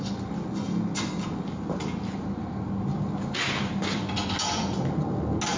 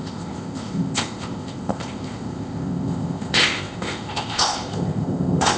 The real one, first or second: first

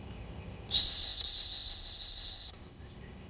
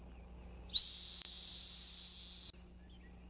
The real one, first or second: second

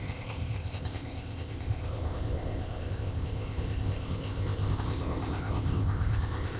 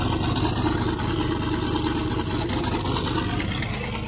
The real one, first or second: second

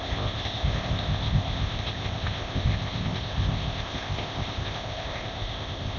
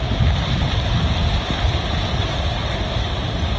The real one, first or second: second